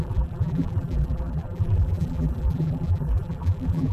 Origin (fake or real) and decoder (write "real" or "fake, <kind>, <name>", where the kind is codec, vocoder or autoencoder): fake, vocoder, BigVGAN v2